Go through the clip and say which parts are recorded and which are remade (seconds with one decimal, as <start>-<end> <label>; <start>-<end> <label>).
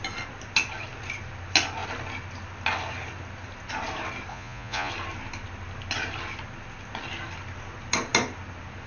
0.0-4.3 recorded; 4.3-4.9 remade; 4.9-8.9 recorded